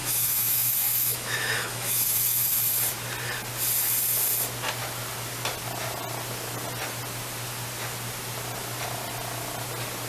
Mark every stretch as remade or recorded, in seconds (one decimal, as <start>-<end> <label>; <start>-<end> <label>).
0.0-2.7 remade; 2.7-10.1 recorded